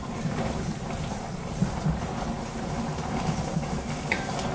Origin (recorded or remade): recorded